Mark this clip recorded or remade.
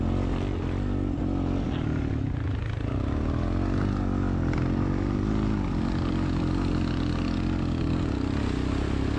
recorded